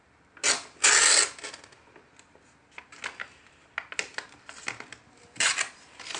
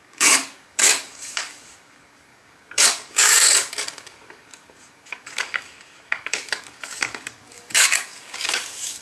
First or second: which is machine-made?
second